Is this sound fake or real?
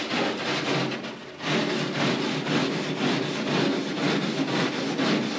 real